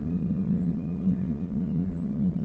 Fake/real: fake